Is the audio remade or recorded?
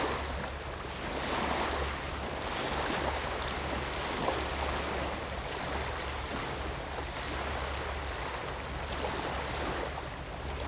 recorded